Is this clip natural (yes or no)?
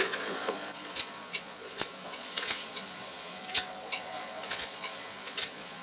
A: no